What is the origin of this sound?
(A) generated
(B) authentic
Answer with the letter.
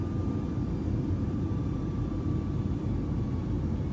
A